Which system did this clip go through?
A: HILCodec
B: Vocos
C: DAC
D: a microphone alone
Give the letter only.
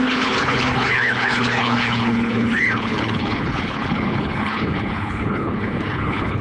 A